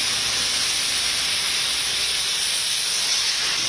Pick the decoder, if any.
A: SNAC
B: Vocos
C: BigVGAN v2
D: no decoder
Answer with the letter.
D